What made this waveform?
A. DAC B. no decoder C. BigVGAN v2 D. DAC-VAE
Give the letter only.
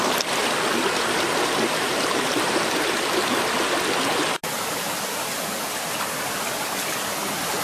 B